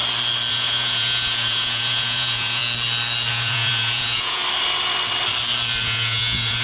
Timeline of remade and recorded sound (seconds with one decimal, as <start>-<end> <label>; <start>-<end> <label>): 0.0-0.5 recorded; 0.5-2.6 remade; 2.6-3.3 recorded; 3.3-4.4 remade; 4.4-5.8 recorded; 5.8-6.6 remade